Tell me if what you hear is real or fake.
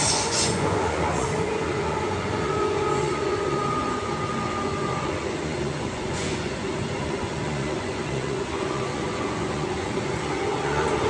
fake